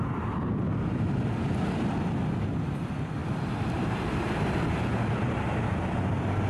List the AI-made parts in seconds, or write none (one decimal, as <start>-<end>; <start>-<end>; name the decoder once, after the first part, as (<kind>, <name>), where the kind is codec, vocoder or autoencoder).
3.2-3.9 (vocoder, BigVGAN v2); 4.9-5.5